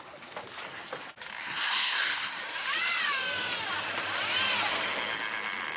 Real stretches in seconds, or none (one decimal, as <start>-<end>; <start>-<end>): 0.0-1.4; 2.4-5.8